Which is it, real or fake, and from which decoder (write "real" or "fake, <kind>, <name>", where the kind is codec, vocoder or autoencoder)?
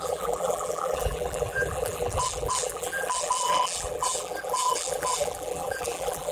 fake, vocoder, BigVGAN v2